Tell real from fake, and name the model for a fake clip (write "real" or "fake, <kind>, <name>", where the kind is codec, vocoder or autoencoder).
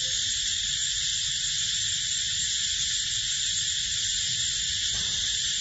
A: real